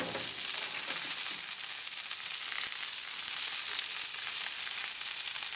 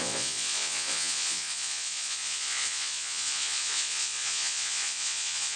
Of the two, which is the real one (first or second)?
first